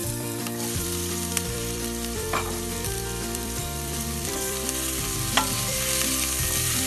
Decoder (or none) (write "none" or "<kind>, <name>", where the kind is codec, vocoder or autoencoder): vocoder, BigVGAN v2